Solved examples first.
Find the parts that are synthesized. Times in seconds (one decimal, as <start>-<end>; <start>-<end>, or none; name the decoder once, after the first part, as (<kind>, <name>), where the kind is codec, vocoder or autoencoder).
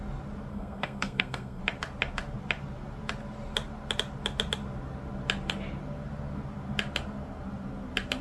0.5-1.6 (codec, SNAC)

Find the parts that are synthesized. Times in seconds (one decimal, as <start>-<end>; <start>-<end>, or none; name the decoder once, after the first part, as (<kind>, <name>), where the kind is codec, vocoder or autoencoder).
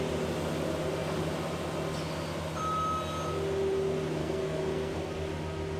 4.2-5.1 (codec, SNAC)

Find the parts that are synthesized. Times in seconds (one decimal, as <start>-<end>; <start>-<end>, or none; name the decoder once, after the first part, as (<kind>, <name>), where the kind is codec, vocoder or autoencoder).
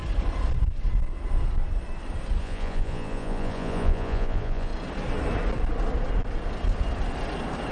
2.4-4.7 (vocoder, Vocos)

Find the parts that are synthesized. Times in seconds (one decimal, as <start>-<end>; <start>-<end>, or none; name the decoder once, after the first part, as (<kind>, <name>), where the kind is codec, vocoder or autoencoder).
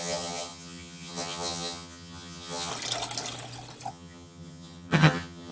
0.0-2.7 (vocoder, HiFi-GAN); 3.9-5.5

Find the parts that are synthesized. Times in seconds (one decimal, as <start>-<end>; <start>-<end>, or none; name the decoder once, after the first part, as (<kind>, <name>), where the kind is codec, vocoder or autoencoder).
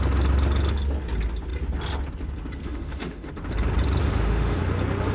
2.6-3.3 (autoencoder, DAC-VAE); 4.0-4.6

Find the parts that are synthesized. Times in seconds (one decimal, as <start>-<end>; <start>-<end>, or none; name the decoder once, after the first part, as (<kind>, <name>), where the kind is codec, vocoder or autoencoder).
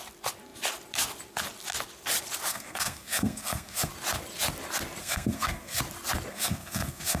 2.5-3.9 (codec, SNAC); 5.0-5.8; 6.3-7.2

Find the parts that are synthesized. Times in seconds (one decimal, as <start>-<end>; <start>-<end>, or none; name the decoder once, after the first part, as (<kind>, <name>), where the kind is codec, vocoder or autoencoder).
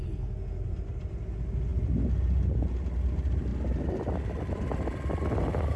none